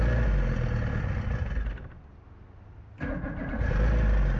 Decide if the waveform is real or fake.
real